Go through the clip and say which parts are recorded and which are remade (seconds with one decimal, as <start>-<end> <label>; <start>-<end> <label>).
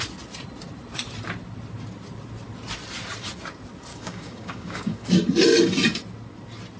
0.0-3.9 recorded; 3.9-5.1 remade; 5.1-6.8 recorded